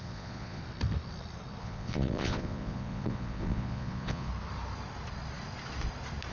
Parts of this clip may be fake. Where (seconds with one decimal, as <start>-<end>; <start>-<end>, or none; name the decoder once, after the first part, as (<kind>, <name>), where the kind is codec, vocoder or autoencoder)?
0.0-0.6 (vocoder, Vocos); 1.6-4.3